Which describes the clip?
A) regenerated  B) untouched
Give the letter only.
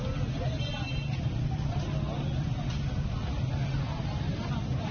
B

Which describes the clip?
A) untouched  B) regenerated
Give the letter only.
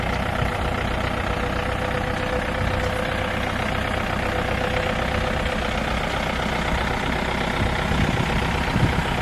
A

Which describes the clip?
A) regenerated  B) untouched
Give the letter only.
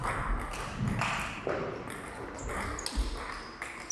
B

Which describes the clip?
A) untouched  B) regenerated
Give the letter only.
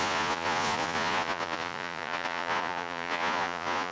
B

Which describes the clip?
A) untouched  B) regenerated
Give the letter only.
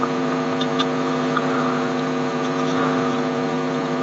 B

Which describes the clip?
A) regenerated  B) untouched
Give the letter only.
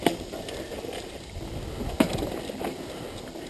B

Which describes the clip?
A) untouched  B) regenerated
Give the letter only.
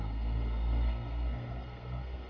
B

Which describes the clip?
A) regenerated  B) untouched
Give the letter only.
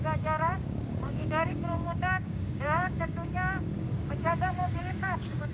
A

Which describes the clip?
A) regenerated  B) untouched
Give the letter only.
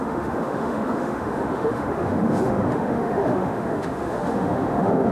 A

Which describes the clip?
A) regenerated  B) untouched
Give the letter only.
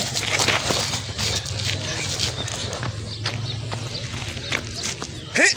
B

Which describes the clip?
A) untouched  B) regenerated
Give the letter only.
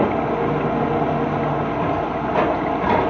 A